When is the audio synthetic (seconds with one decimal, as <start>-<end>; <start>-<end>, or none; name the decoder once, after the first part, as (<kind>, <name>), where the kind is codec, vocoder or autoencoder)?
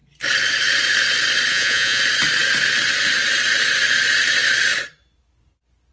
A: 1.5-2.0 (vocoder, Vocos)